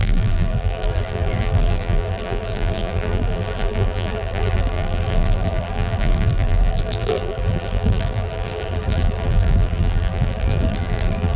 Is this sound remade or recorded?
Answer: remade